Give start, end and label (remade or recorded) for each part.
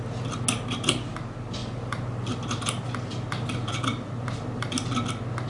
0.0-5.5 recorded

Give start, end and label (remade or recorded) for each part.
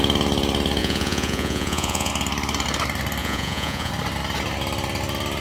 0.0-0.8 recorded; 0.8-2.1 remade; 2.1-3.2 recorded; 3.2-3.9 remade; 3.9-5.4 recorded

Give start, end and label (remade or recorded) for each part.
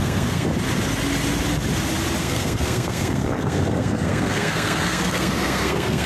0.0-0.5 remade; 0.5-2.2 recorded; 2.2-6.1 remade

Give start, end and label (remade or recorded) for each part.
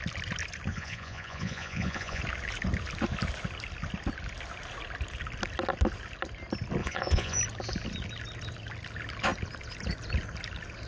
0.0-0.7 recorded; 0.7-2.2 remade; 2.2-6.8 recorded; 6.8-7.4 remade; 7.4-10.9 recorded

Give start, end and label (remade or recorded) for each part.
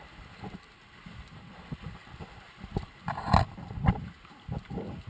0.0-5.1 recorded